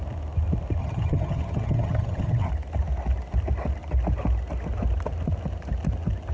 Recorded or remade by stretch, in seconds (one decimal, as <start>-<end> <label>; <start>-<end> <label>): 0.0-0.8 recorded; 0.8-2.5 remade; 2.5-6.3 recorded